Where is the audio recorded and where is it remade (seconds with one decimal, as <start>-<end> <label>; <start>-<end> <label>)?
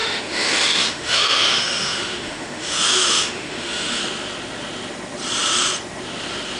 0.0-4.0 remade; 4.0-6.6 recorded